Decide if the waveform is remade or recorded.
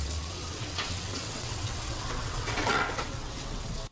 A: remade